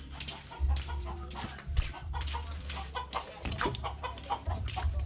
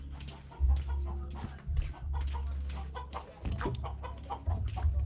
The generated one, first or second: first